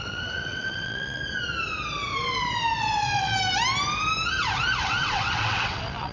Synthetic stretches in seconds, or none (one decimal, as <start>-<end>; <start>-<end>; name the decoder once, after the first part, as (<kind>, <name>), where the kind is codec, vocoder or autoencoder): 0.0-1.2 (vocoder, WaveNeXt); 2.8-3.3; 4.8-6.1